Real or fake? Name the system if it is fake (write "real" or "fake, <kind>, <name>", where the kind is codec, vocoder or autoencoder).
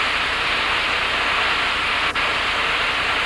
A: real